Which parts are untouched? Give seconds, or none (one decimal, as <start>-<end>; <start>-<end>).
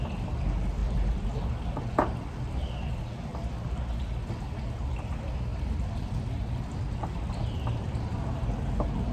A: 0.0-0.8; 2.4-3.3; 4.3-5.5; 6.6-9.1